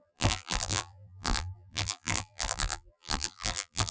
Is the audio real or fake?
fake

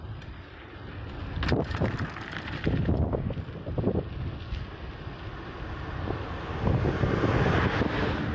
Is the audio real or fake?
real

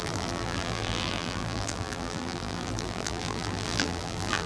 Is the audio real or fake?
fake